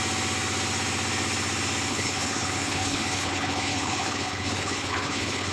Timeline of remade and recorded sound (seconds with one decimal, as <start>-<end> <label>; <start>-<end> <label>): 0.0-1.9 recorded; 1.9-5.5 remade